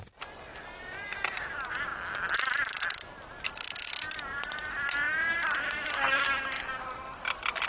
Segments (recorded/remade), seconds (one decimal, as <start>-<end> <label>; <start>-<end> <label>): 0.0-7.7 recorded